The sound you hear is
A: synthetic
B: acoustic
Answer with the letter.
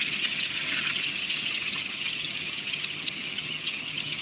A